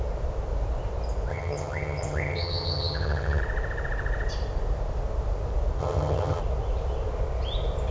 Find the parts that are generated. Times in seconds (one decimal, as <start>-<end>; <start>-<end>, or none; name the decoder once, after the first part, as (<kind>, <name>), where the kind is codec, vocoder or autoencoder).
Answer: 1.3-3.4 (vocoder, HiFi-GAN); 5.8-6.4

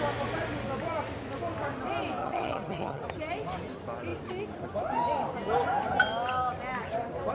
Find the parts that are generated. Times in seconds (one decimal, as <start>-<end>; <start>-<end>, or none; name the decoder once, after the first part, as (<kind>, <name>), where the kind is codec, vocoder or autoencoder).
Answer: 2.2-3.0 (vocoder, HiFi-GAN)

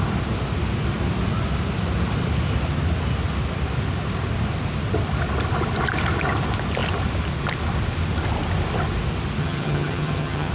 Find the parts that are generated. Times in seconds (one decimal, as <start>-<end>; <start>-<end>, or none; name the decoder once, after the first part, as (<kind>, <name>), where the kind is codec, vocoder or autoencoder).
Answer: 9.4-10.5 (vocoder, HiFi-GAN)

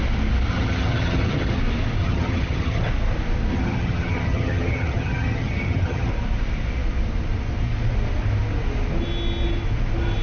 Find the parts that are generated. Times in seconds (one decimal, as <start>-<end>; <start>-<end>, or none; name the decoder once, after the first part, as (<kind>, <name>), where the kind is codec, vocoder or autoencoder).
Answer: 0.5-1.6 (vocoder, HiFi-GAN); 2.0-2.9; 3.5-6.1

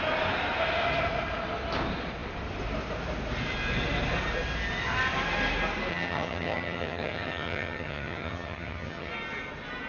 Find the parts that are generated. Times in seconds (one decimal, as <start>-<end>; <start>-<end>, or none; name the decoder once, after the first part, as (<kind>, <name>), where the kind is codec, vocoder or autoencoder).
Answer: 5.9-9.1 (vocoder, HiFi-GAN)

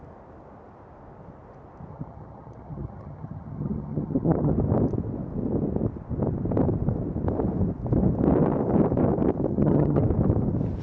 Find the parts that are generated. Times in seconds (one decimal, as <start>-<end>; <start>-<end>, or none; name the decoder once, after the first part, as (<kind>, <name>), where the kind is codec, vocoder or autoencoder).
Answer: 1.9-4.5 (vocoder, HiFi-GAN); 9.5-10.0